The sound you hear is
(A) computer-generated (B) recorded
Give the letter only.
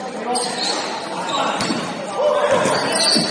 B